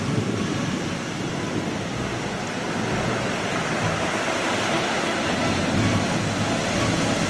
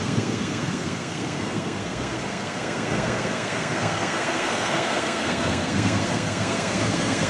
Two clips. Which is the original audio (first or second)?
first